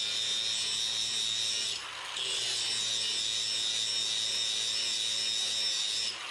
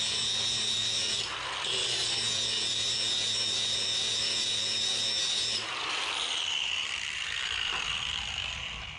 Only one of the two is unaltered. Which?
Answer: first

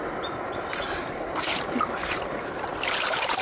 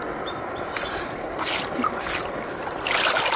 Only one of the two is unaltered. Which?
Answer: second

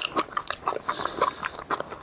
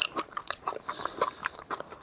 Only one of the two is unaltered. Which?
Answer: first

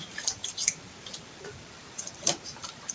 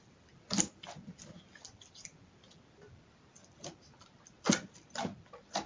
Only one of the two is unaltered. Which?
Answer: second